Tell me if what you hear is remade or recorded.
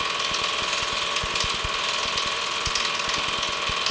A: recorded